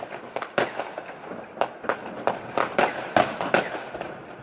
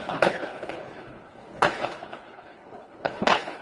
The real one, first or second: first